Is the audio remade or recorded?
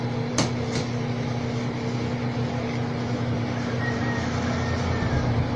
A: recorded